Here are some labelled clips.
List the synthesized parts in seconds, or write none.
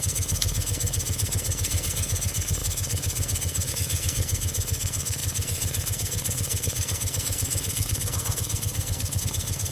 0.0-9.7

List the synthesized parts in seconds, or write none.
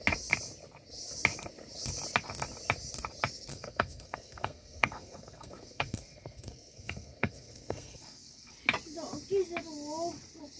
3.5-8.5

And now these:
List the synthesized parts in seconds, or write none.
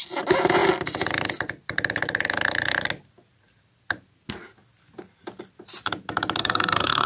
6.4-7.1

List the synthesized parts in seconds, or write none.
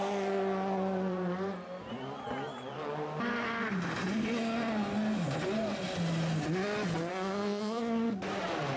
7.1-7.8